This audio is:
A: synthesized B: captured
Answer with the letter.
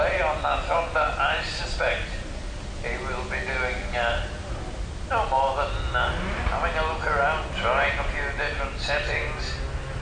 B